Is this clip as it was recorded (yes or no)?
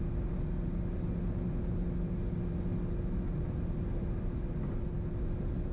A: yes